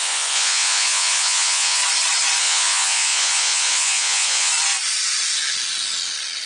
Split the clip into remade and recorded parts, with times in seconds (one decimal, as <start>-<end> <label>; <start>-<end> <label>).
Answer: 0.0-1.8 remade; 1.8-2.4 recorded; 2.4-4.5 remade; 4.5-6.5 recorded